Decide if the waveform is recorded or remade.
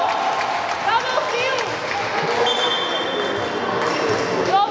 recorded